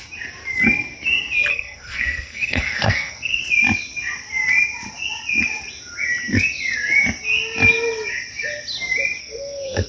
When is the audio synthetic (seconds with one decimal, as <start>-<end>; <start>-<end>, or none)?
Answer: 1.5-3.4; 9.2-9.9